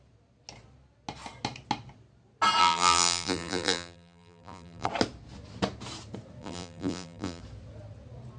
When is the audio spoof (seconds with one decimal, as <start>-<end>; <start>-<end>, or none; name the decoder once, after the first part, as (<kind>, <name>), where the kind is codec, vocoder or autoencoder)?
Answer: 2.6-4.9 (vocoder, BigVGAN v2); 6.4-7.4

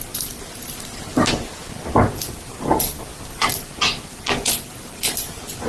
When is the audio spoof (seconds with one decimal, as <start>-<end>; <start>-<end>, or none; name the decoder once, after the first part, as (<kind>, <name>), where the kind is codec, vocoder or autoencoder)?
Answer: none

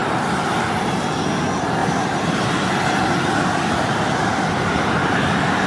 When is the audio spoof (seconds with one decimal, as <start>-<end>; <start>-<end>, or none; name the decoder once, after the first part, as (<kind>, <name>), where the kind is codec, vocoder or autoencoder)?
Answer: none

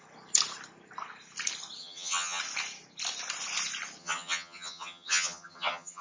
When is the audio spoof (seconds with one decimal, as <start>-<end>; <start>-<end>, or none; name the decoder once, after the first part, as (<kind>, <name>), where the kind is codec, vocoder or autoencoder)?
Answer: 1.8-2.4 (vocoder, HiFi-GAN); 4.0-6.0

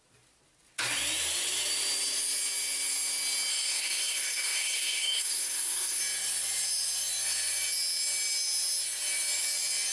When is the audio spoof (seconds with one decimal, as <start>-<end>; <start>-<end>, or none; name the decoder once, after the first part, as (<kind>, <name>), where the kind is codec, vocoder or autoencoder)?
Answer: 3.5-6.0 (codec, SNAC)

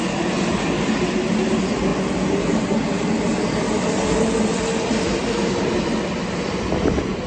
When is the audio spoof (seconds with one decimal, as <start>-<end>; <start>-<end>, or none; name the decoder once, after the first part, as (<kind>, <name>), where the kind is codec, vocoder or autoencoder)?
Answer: none